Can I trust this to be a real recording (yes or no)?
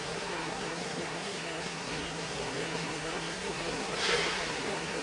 no